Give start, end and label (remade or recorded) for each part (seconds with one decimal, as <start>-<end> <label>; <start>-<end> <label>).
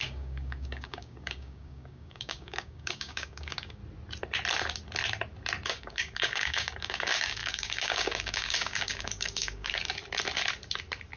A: 0.0-3.8 remade; 3.8-5.7 recorded; 5.7-10.0 remade; 10.0-11.2 recorded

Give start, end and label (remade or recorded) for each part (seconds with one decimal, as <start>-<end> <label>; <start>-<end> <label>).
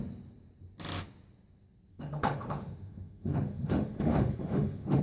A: 0.0-1.9 recorded; 1.9-5.0 remade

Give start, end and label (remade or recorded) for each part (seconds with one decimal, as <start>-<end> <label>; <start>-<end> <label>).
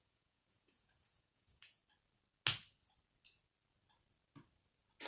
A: 0.0-1.8 remade; 1.8-5.1 recorded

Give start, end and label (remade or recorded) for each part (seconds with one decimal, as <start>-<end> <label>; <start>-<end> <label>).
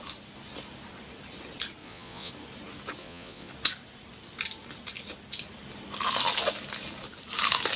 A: 0.0-1.8 recorded; 1.8-2.3 remade; 2.3-3.0 recorded; 3.0-3.5 remade; 3.5-7.8 recorded